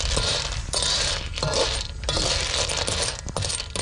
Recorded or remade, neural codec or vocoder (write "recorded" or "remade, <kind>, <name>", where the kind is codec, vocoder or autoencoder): recorded